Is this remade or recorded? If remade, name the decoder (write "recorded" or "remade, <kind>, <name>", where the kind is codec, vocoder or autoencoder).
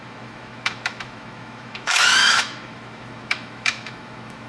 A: remade, autoencoder, DAC-VAE